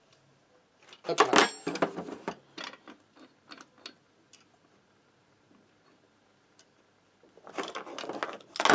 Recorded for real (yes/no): yes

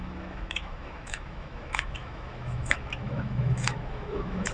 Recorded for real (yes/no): no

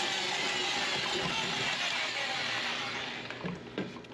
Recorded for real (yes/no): yes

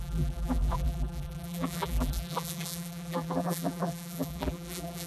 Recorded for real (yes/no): no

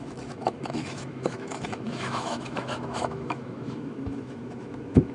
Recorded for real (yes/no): no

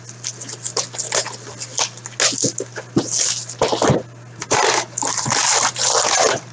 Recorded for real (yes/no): yes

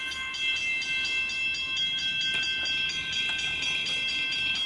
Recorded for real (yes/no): yes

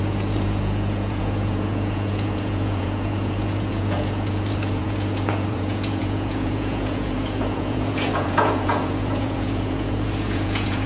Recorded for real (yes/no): no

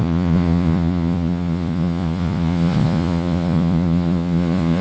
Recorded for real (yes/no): no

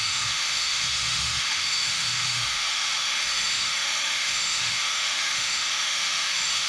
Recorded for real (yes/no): no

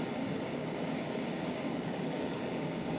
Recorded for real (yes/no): no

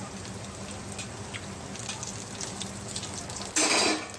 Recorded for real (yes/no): yes